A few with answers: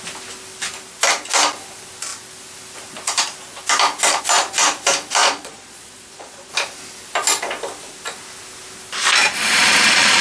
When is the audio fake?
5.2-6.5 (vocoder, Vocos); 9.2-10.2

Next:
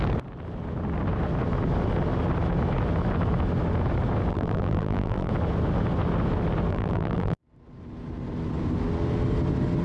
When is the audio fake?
4.3-5.3 (vocoder, BigVGAN v2); 6.7-7.4

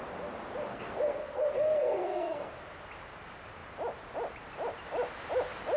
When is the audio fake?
0.7-2.5 (codec, SNAC)